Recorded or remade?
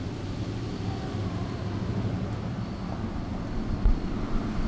recorded